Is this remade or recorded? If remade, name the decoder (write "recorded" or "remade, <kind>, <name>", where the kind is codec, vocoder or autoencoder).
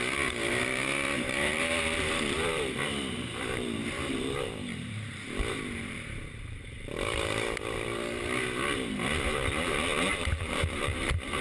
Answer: remade, vocoder, BigVGAN v2